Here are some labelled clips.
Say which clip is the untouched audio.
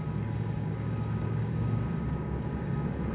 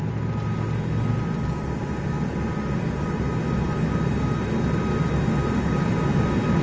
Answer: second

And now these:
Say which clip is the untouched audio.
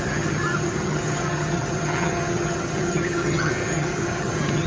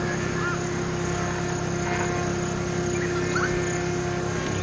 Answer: second